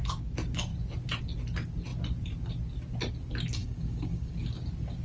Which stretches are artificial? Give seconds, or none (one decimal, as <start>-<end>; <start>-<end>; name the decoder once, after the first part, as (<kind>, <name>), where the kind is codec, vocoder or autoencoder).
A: 3.6-4.3 (codec, DAC)